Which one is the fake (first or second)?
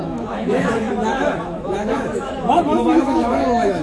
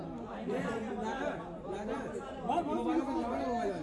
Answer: first